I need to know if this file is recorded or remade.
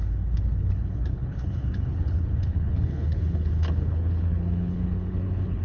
remade